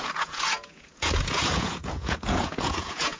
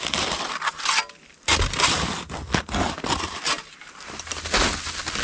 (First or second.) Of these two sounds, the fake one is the first